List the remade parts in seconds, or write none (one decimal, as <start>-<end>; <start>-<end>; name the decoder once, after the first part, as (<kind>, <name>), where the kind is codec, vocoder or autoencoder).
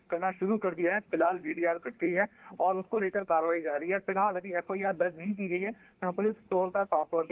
0.0-7.3 (codec, SNAC)